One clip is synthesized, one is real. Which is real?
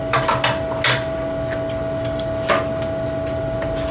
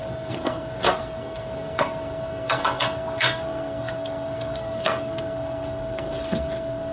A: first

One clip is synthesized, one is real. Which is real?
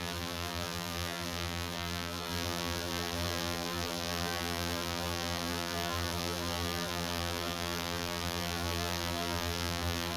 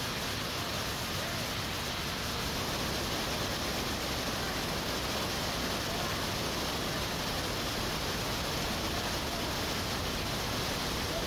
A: second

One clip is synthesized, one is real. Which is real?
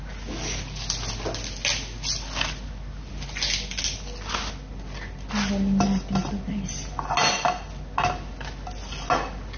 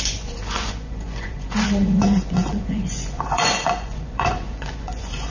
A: first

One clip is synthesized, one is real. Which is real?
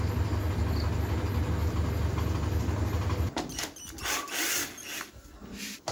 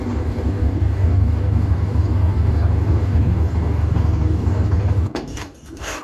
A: first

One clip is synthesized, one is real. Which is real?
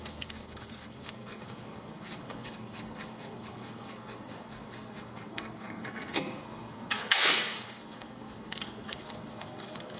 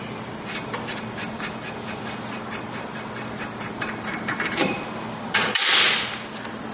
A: second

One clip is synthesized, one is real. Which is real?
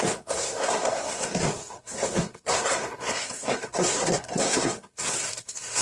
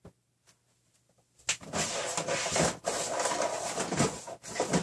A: second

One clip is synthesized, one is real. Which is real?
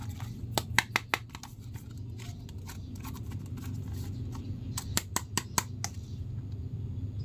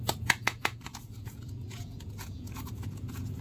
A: first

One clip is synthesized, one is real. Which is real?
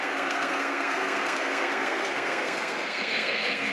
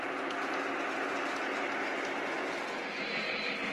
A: second